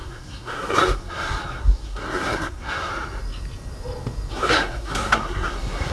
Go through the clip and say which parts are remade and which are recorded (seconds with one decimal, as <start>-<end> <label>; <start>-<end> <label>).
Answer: 0.0-2.9 remade; 2.9-4.3 recorded; 4.3-5.9 remade